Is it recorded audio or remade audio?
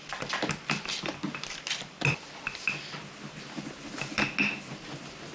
recorded